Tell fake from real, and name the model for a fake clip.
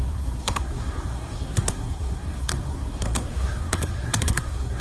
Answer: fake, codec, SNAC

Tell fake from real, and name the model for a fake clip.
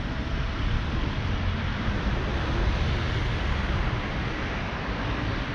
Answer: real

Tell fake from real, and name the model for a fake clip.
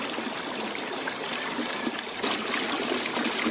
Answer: real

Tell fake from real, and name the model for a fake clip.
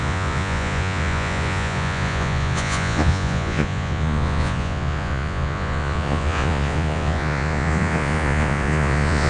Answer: fake, vocoder, Vocos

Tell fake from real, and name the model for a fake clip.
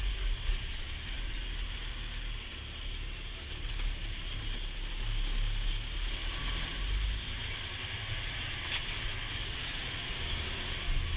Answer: real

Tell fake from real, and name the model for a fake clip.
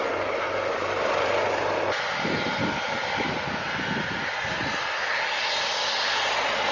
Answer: real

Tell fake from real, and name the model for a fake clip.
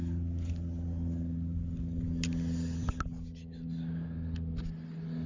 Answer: real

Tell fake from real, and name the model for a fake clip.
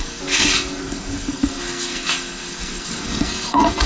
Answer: fake, codec, SNAC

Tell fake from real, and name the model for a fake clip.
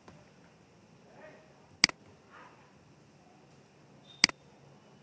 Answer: real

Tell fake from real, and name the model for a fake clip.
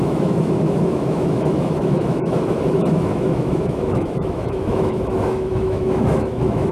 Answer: fake, autoencoder, DAC-VAE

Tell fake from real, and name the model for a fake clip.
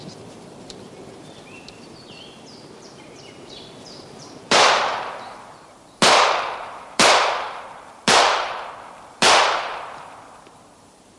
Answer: fake, vocoder, BigVGAN v2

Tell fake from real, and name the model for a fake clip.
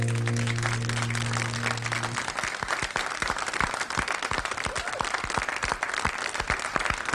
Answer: real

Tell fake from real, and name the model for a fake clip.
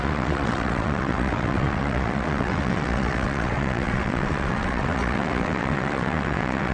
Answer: fake, vocoder, WaveNeXt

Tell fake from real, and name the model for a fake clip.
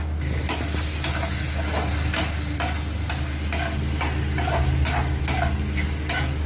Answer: real